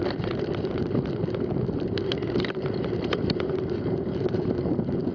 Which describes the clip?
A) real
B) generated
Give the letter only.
B